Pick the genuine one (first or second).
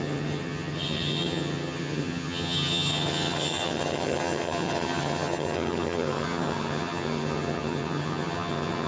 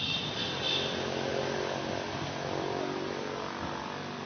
second